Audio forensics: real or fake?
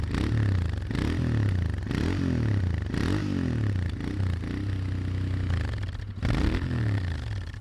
real